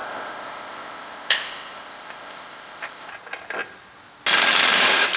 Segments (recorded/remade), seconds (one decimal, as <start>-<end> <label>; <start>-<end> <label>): 0.0-3.1 remade; 3.1-5.2 recorded